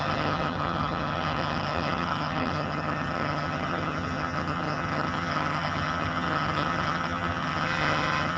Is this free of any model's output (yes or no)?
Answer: no